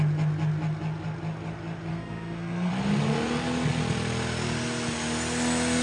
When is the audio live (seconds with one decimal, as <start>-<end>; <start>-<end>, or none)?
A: 0.0-1.9; 2.7-5.8